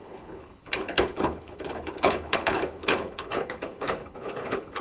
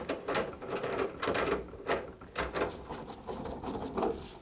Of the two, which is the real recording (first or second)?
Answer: second